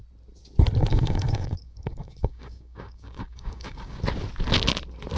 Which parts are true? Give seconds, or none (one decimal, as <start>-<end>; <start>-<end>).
0.0-0.9; 4.0-5.2